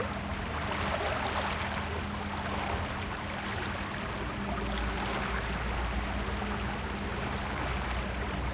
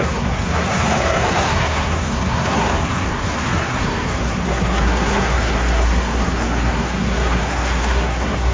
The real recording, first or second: first